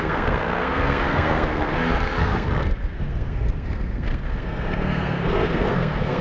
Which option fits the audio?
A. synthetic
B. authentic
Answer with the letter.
A